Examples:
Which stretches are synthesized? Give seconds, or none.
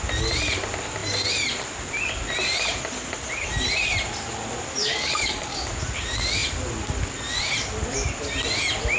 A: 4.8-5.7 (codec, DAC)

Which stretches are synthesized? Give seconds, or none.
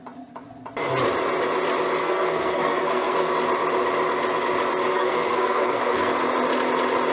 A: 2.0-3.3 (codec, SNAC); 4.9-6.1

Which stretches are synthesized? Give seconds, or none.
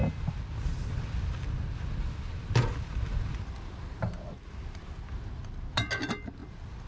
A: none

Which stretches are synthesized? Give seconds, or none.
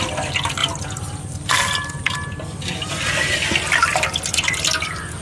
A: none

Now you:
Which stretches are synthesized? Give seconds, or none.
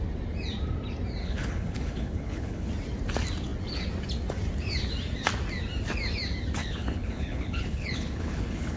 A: 1.2-2.7 (codec, HILCodec); 6.6-8.8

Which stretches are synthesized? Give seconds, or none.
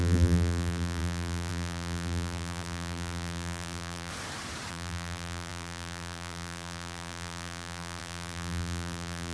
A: 0.0-4.1 (vocoder, BigVGAN v2); 4.7-9.3